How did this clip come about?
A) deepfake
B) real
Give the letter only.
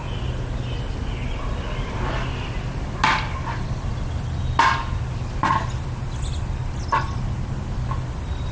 B